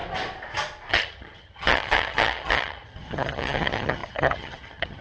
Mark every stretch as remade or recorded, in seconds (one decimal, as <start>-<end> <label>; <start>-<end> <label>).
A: 0.0-0.9 recorded; 0.9-5.0 remade